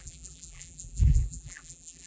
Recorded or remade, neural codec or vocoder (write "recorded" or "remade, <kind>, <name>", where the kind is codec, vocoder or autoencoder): remade, vocoder, BigVGAN v2